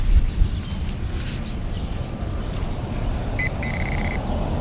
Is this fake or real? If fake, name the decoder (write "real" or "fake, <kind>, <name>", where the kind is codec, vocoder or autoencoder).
real